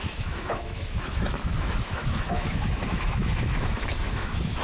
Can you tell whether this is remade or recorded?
remade